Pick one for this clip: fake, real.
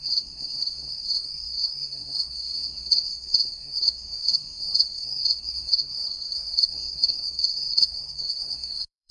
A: fake